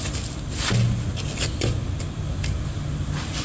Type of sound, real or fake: real